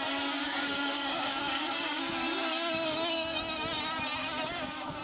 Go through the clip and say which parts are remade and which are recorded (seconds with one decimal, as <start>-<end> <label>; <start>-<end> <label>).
0.0-0.4 recorded; 0.4-3.4 remade; 3.4-4.2 recorded; 4.2-5.0 remade